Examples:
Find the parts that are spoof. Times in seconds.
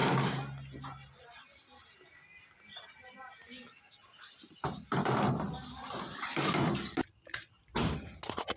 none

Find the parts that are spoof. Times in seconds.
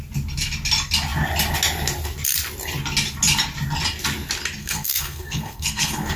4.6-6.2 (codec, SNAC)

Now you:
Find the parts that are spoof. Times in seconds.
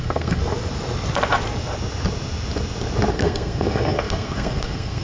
0.0-0.4 (codec, SNAC); 3.1-5.0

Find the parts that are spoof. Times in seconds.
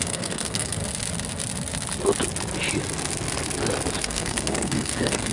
0.0-0.8 (codec, SNAC); 4.0-5.3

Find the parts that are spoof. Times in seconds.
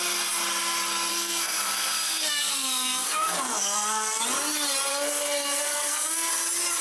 1.1-4.2 (codec, SNAC); 4.9-6.3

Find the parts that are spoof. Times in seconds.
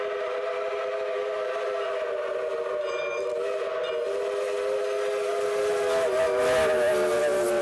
none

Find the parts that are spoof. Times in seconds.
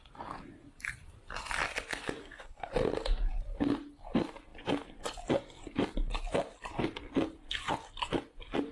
2.2-2.7 (codec, SNAC)